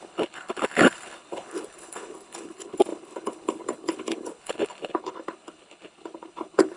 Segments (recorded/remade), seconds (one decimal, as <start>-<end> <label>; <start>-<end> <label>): 0.0-6.8 remade